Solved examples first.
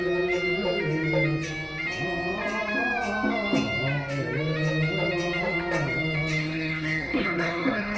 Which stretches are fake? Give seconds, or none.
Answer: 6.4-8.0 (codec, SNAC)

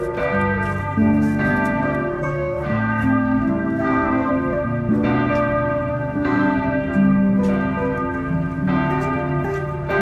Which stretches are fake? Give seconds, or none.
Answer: 0.8-4.3 (codec, SNAC); 5.9-7.4

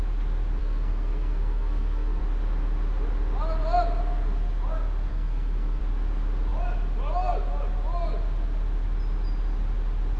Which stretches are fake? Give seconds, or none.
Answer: 0.6-2.2 (codec, SNAC); 5.1-5.8

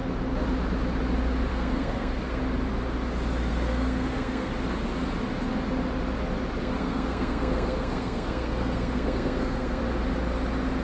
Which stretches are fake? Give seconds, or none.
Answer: 1.5-2.4 (codec, SNAC); 3.5-4.5; 6.6-9.8

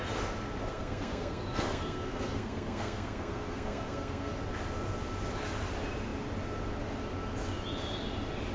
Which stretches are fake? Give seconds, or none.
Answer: 0.7-4.3 (codec, SNAC)